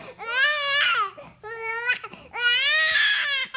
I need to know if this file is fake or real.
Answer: real